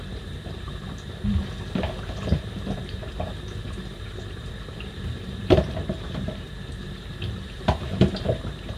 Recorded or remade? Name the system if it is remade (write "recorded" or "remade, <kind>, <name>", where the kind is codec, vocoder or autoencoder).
remade, vocoder, BigVGAN v2